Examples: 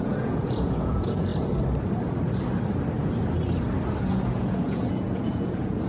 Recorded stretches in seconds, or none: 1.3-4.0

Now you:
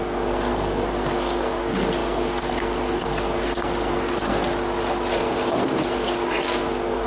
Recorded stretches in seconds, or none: 4.5-5.1